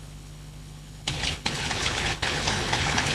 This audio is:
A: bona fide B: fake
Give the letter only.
B